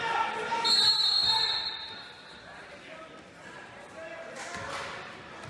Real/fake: real